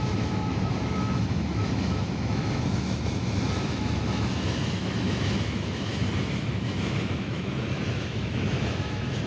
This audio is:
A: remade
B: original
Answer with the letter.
A